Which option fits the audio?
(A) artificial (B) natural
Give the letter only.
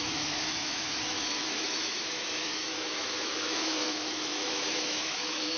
A